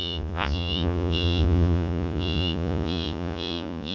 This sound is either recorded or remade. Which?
remade